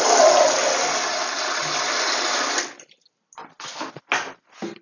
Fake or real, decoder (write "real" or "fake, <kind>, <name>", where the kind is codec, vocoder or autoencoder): real